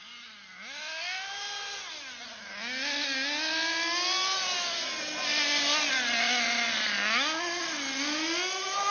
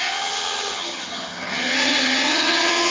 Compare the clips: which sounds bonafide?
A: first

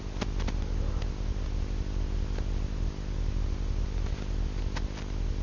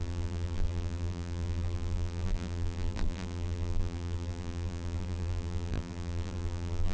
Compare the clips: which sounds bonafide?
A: first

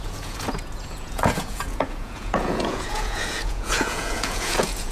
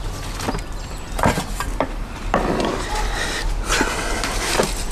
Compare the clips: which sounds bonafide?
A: second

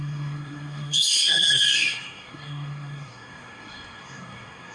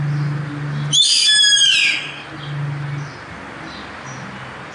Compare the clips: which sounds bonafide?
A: second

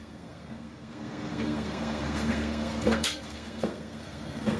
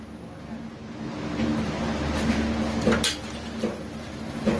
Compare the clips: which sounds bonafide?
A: second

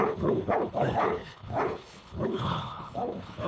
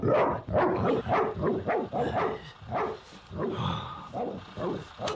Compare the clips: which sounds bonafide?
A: second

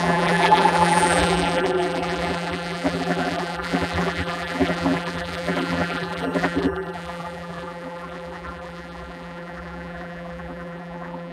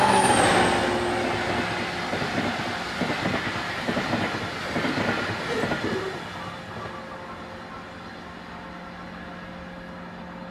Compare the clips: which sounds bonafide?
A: second